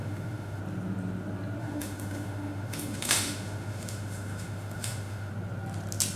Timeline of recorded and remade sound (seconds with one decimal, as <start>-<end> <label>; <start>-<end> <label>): 0.0-0.6 remade; 0.6-1.6 recorded; 1.6-5.3 remade; 5.3-6.2 recorded